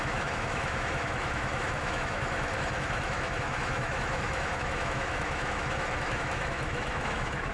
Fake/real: fake